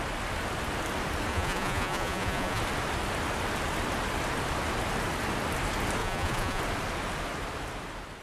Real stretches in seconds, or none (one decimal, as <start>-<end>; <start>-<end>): 0.0-1.3; 2.6-6.0; 6.6-8.2